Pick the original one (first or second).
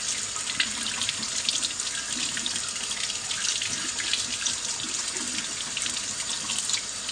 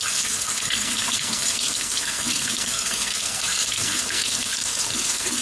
first